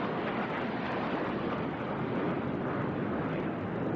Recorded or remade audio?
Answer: recorded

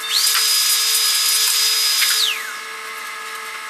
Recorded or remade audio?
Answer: recorded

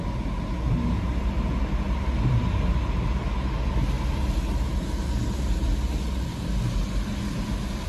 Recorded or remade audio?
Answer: recorded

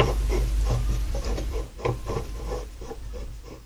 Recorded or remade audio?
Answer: remade